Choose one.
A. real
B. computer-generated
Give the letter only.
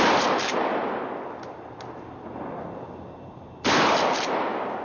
A